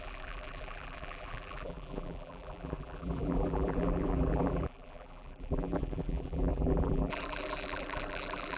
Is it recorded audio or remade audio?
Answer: remade